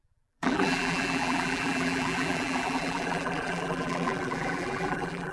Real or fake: fake